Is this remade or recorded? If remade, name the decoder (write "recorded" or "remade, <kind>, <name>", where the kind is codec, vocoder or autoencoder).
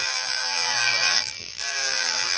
remade, vocoder, BigVGAN v2